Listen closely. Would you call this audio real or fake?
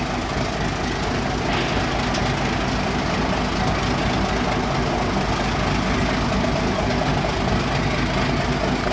real